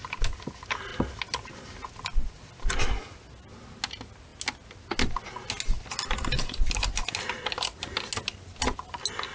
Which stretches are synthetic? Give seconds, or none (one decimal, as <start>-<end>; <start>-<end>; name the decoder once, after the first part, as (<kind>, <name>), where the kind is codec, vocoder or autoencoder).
none